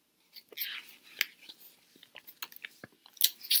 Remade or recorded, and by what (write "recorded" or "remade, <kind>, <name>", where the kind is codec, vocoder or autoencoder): recorded